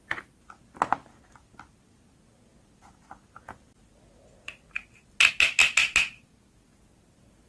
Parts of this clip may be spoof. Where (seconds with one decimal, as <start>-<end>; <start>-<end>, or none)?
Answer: none